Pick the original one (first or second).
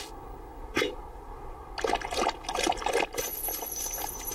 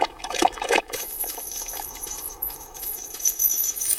first